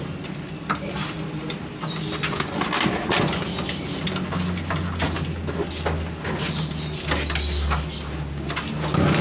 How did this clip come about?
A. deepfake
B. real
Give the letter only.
B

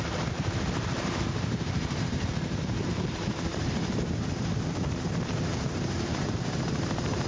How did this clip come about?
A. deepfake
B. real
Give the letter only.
A